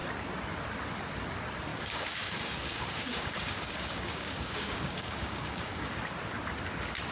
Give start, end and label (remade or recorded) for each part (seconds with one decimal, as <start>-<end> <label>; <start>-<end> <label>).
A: 0.0-1.7 recorded; 1.7-6.0 remade; 6.0-7.1 recorded